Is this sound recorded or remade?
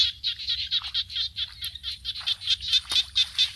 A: recorded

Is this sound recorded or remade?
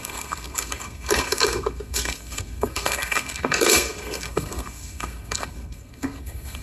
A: remade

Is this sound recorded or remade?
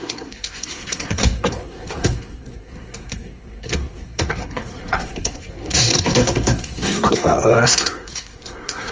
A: remade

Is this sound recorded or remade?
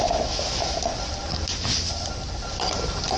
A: recorded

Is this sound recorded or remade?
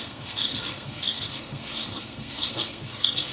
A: remade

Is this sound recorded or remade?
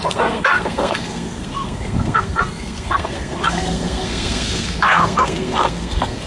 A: remade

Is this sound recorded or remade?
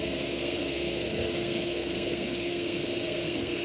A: remade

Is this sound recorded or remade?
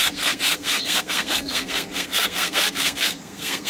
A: remade